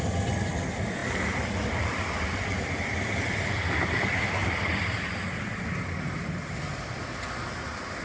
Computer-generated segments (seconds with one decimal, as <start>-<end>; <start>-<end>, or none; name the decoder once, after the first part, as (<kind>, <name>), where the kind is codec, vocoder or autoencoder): 4.4-5.2 (vocoder, BigVGAN v2)